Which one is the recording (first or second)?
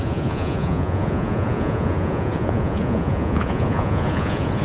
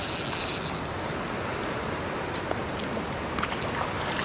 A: second